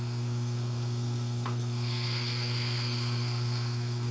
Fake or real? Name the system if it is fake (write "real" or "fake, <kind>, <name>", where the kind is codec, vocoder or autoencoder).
fake, codec, SNAC